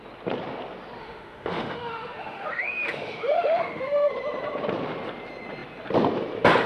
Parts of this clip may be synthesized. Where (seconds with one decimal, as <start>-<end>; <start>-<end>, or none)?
1.0-4.1